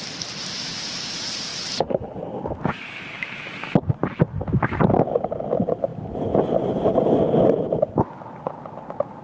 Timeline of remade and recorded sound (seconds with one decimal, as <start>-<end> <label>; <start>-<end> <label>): 0.0-9.2 recorded